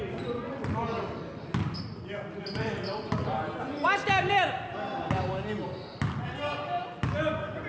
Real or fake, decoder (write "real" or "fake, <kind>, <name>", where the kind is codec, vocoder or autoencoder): real